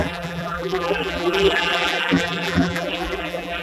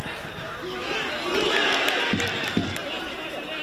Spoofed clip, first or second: first